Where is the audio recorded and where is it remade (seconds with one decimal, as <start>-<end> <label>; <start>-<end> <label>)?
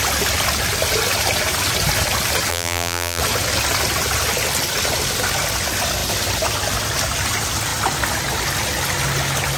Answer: 0.0-2.5 recorded; 2.5-3.2 remade; 3.2-9.6 recorded